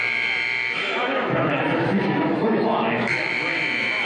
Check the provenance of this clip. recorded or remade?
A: remade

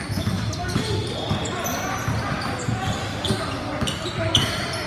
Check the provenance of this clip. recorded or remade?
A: recorded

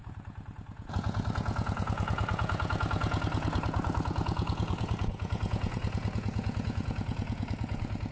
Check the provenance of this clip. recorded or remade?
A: remade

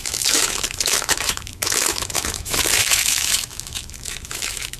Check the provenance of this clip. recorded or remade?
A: remade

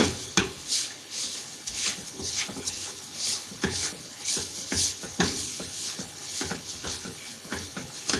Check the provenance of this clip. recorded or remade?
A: remade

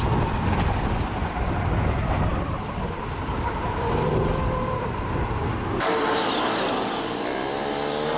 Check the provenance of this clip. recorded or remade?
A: recorded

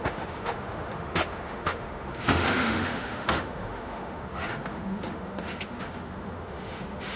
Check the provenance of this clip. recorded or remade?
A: remade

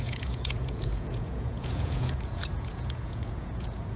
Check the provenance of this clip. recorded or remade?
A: remade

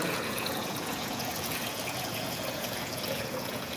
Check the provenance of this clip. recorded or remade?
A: remade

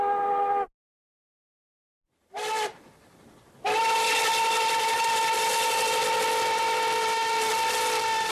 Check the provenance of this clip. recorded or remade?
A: recorded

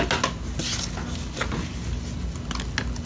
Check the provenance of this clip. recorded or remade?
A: recorded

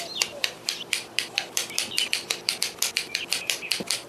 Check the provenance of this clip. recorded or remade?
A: remade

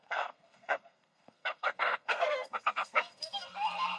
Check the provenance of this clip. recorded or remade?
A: remade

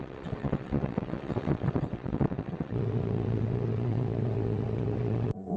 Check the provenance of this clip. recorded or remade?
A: remade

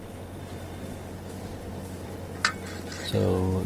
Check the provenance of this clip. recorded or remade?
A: recorded